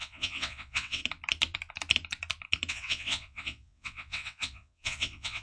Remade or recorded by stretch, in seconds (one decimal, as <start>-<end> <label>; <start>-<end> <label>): 0.0-1.0 remade; 1.0-2.7 recorded; 2.7-5.4 remade